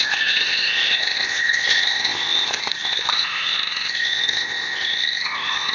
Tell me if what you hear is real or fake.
fake